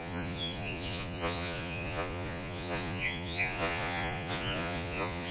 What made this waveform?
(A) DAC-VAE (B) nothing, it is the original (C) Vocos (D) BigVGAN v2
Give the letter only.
C